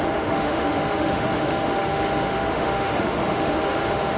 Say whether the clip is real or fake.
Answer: fake